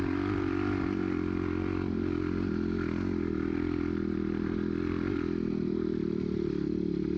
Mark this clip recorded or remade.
recorded